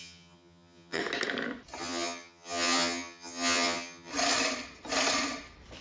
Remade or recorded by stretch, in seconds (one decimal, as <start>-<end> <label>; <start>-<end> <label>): 0.0-1.0 remade; 1.0-1.8 recorded; 1.8-4.1 remade; 4.1-5.8 recorded